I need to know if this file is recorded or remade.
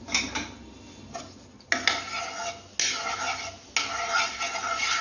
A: recorded